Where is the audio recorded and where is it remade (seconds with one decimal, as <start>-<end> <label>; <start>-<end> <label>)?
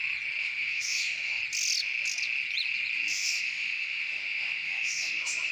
0.0-0.4 recorded; 0.4-1.4 remade; 1.4-3.1 recorded; 3.1-5.5 remade